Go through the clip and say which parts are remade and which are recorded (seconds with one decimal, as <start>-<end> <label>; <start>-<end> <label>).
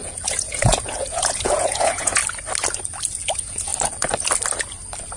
0.0-2.2 remade; 2.2-3.3 recorded; 3.3-3.7 remade; 3.7-5.2 recorded